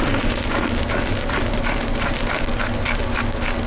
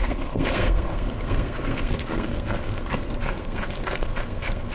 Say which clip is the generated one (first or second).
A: second